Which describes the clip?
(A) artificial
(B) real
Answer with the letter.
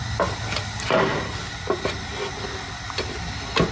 B